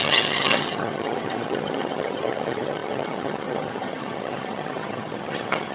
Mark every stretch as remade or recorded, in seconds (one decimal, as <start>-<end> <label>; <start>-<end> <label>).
0.0-5.7 remade